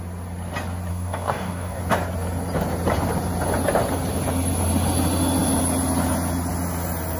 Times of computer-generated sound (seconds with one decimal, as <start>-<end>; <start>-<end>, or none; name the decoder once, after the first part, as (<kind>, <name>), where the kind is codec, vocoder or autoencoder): 0.9-1.8 (codec, DAC)